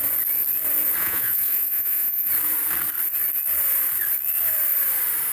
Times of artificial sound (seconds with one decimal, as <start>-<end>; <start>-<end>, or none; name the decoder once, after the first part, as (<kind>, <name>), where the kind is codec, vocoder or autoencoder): 1.0-2.3 (vocoder, Vocos)